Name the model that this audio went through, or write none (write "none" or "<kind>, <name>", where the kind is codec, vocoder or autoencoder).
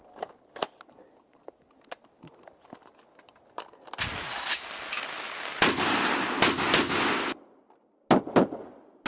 none